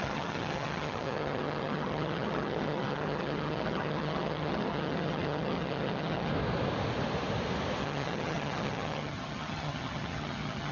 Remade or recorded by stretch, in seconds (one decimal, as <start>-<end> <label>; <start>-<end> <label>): 0.0-6.3 remade; 6.3-7.8 recorded; 7.8-10.7 remade

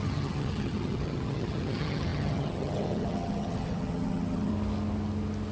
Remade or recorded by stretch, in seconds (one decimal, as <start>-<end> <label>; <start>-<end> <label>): 0.0-4.5 remade; 4.5-5.5 recorded

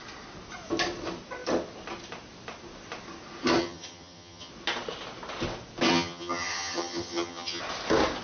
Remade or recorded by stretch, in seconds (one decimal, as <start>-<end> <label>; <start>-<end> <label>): 0.0-3.6 recorded; 3.6-4.5 remade; 4.5-5.9 recorded; 5.9-7.6 remade; 7.6-8.2 recorded

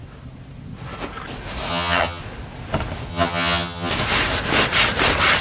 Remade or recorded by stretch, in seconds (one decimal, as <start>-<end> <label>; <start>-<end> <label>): 0.0-1.7 recorded; 1.7-2.2 remade; 2.2-3.1 recorded; 3.1-3.9 remade; 3.9-5.4 recorded

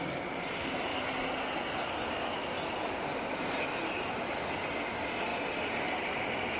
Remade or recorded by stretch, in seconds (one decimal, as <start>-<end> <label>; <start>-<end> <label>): 0.0-6.6 recorded

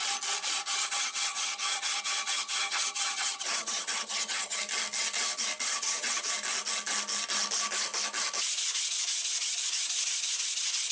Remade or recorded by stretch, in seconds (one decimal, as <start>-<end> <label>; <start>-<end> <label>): 0.0-0.8 recorded; 0.8-4.6 remade; 4.6-5.7 recorded; 5.7-6.3 remade; 6.3-10.9 recorded